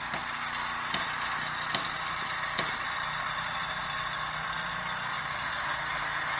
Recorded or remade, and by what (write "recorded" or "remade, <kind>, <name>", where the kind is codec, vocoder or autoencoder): recorded